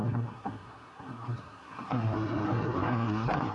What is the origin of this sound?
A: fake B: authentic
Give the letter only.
A